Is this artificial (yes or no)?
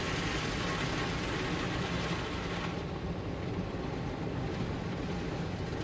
no